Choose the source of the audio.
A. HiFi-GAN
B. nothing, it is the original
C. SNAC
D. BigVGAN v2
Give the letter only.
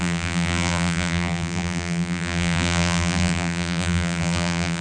D